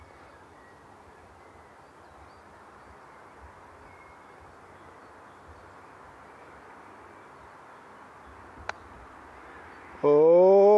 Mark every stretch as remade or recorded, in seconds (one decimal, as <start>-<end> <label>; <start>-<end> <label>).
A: 0.0-10.8 recorded

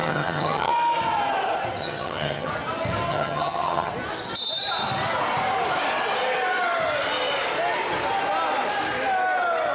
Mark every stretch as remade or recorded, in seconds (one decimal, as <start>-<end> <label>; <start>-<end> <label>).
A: 0.0-0.7 remade; 0.7-1.8 recorded; 1.8-2.5 remade; 2.5-3.1 recorded; 3.1-3.9 remade; 3.9-9.7 recorded